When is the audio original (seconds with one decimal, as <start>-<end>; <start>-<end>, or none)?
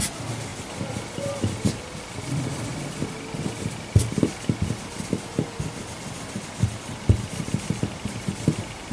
0.0-8.9